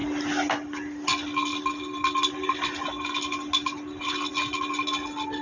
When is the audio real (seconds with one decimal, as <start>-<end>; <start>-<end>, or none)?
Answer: 0.0-5.4